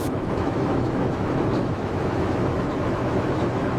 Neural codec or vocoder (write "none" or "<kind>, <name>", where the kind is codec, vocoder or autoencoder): autoencoder, DAC-VAE